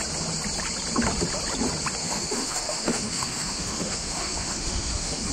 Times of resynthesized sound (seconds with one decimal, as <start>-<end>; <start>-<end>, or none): 2.0-5.3